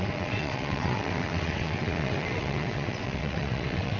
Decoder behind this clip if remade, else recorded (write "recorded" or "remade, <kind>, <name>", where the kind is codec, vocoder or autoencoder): remade, vocoder, WaveNeXt